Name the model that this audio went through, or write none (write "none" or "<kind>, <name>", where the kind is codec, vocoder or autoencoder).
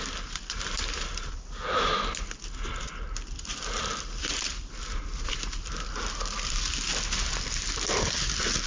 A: none